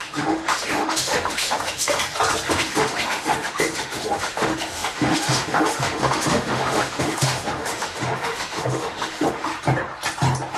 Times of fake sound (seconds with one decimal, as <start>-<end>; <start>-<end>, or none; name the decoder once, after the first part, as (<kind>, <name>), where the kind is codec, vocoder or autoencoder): 0.0-2.0 (autoencoder, DAC-VAE); 2.5-9.5